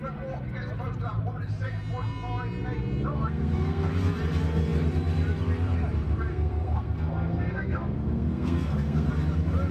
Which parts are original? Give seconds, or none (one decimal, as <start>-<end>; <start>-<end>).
0.0-3.1; 3.9-6.3; 9.1-9.7